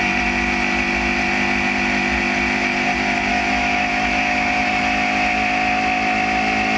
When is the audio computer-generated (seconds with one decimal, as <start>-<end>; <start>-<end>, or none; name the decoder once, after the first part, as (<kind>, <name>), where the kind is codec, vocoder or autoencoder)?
3.3-4.8 (autoencoder, DAC-VAE)